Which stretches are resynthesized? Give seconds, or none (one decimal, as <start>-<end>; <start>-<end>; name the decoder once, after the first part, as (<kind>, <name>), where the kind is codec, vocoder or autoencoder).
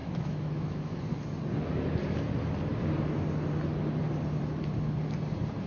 0.0-1.0 (autoencoder, DAC-VAE)